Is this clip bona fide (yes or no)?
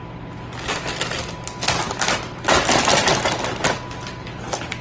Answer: yes